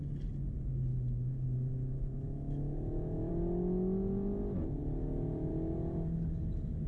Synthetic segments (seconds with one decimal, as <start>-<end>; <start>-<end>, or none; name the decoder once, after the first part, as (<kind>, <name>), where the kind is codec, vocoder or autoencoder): 0.9-3.3 (autoencoder, DAC-VAE)